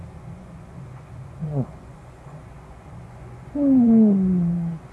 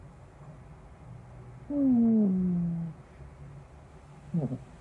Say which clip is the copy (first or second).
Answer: first